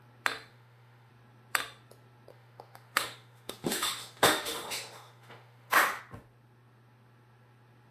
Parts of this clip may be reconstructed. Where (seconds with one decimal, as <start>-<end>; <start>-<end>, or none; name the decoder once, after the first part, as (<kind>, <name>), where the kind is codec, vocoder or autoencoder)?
0.5-1.1 (autoencoder, DAC-VAE); 2.3-6.0